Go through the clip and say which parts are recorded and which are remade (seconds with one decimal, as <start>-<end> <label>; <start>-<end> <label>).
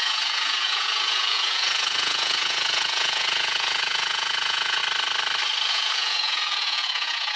0.0-4.8 remade; 4.8-5.7 recorded; 5.7-7.4 remade